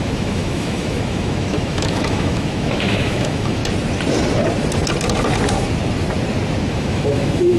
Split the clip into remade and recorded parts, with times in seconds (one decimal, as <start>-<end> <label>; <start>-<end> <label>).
0.0-3.6 remade; 3.6-6.7 recorded; 6.7-7.6 remade